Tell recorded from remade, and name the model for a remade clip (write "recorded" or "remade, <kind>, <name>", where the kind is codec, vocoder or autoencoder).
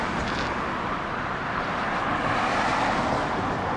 recorded